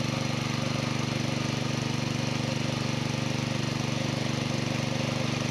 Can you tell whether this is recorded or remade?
recorded